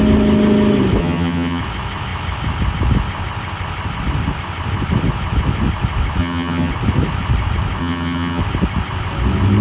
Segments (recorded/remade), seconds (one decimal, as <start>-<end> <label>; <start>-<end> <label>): 0.0-1.0 recorded; 1.0-1.6 remade; 1.6-6.2 recorded; 6.2-6.7 remade; 6.7-7.8 recorded; 7.8-8.4 remade; 8.4-9.6 recorded